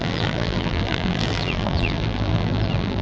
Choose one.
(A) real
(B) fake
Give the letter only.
B